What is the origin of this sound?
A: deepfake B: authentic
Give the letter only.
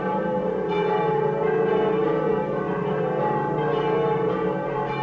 A